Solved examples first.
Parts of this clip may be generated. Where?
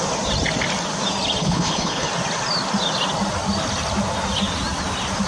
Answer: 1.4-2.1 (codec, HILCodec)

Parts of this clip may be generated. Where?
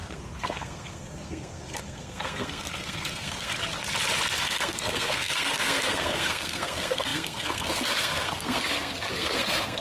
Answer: 0.0-3.5 (codec, SNAC); 4.4-9.8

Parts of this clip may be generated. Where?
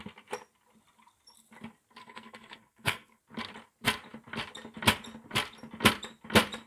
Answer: 2.0-3.2 (codec, SNAC)